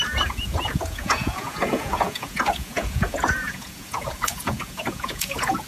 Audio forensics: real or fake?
fake